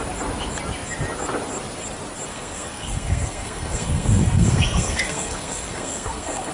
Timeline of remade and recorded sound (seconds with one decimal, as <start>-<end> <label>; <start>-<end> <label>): 0.0-2.3 recorded; 2.3-6.5 remade